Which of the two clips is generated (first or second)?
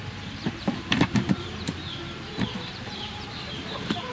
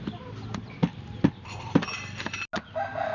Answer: first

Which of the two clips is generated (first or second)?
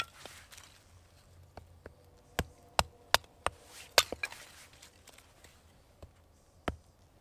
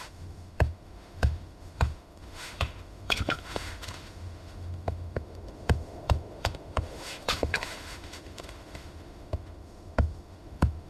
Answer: second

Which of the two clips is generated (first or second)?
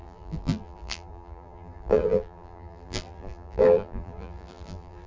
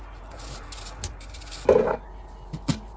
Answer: first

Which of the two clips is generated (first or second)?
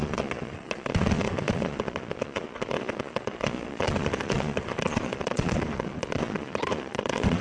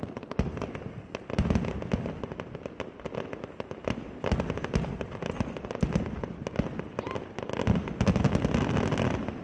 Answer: first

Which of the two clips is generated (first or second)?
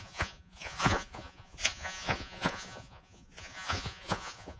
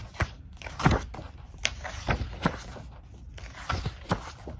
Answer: first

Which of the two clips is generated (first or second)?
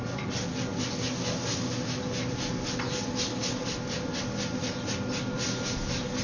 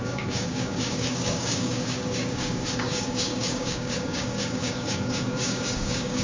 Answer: second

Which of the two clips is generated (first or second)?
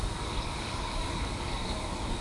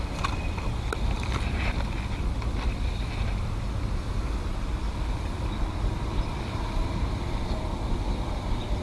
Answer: first